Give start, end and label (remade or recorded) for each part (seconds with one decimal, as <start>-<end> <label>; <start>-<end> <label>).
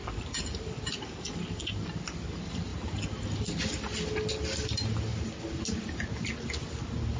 0.0-7.2 recorded